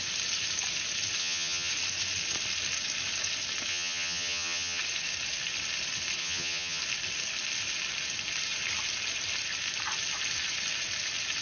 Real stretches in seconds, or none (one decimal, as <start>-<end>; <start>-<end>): 0.0-1.2; 1.7-3.7; 4.8-6.2; 6.8-11.4